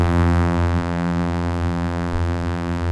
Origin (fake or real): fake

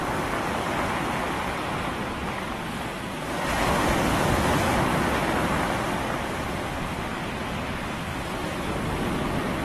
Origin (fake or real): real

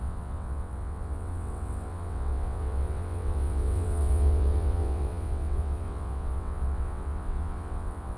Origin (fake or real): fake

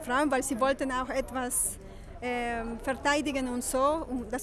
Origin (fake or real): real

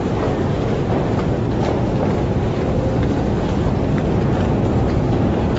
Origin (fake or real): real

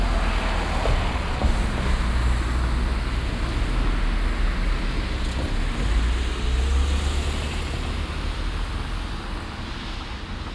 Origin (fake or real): real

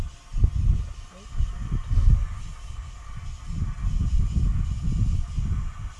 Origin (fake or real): real